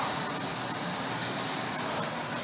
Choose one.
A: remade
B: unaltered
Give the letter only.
B